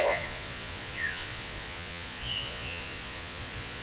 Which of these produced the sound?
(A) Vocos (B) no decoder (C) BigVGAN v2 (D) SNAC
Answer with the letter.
A